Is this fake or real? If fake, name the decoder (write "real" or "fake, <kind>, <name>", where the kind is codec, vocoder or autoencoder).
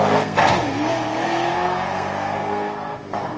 fake, codec, SNAC